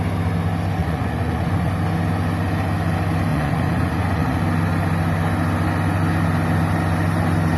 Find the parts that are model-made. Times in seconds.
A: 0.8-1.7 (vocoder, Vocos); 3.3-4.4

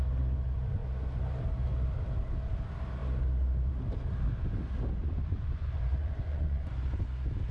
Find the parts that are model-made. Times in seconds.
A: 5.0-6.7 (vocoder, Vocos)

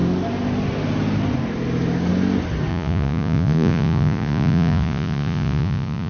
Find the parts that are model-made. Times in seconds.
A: 2.7-6.1 (vocoder, Vocos)